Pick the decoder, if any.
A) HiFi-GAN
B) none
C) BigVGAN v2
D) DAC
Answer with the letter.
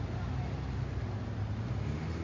B